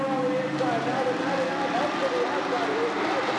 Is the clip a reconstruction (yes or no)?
no